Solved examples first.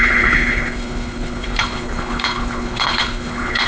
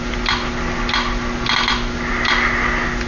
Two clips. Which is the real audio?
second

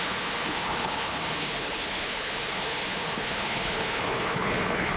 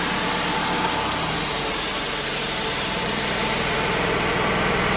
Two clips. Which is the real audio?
second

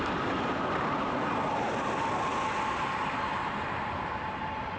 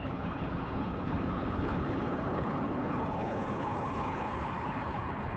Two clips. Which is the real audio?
first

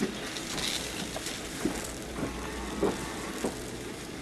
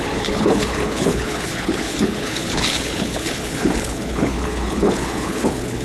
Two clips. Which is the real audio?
first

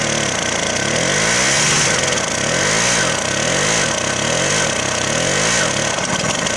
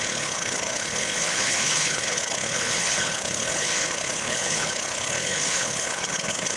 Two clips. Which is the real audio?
first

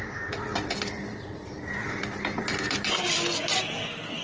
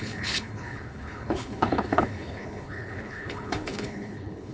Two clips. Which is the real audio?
first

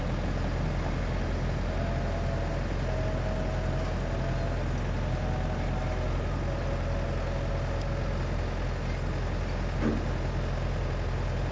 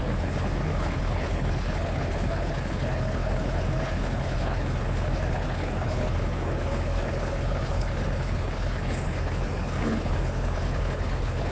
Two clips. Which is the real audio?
first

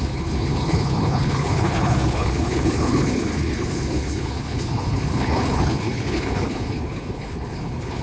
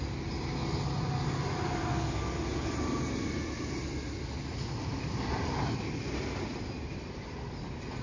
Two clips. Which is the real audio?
second